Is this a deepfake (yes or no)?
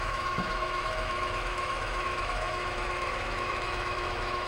yes